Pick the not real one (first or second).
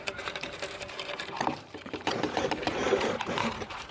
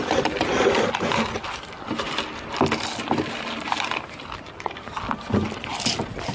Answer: first